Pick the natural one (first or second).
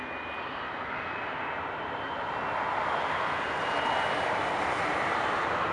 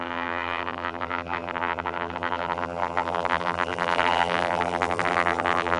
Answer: first